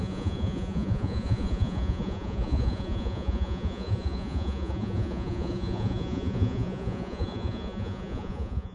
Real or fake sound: fake